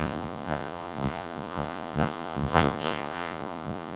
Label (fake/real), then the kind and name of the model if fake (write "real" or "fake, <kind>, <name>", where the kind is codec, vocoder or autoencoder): fake, vocoder, Vocos